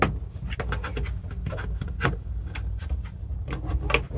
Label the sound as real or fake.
real